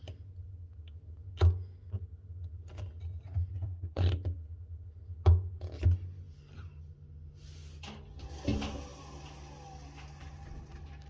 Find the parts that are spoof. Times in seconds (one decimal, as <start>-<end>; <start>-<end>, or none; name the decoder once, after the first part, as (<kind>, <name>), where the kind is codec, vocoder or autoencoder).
3.5-4.1 (codec, SNAC)